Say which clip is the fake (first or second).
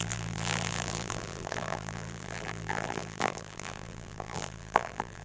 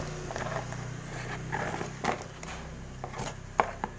first